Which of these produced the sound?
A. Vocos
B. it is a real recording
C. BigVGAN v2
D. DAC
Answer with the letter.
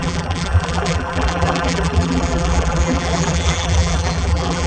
C